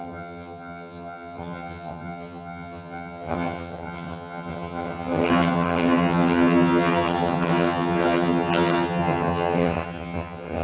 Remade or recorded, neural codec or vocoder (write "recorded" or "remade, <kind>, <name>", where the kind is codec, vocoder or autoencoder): remade, vocoder, HiFi-GAN